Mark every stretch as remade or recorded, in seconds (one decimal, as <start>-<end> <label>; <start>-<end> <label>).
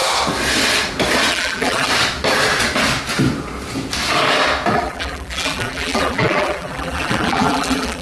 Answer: 0.0-1.3 recorded; 1.3-1.9 remade; 1.9-4.7 recorded; 4.7-8.0 remade